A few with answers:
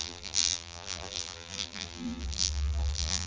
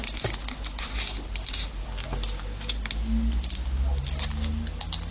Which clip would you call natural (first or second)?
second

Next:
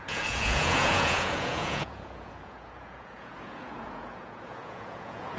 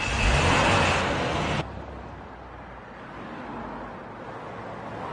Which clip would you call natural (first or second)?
second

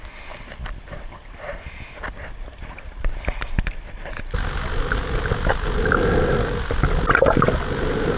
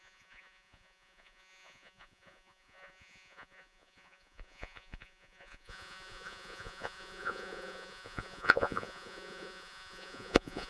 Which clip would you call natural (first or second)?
first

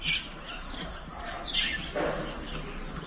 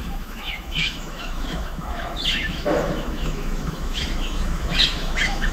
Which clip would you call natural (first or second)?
first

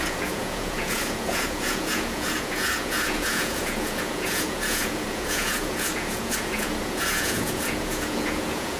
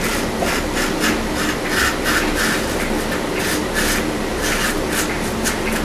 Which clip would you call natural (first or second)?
second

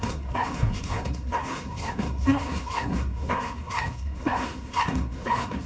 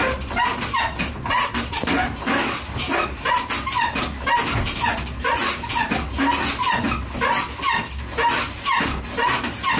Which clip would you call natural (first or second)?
second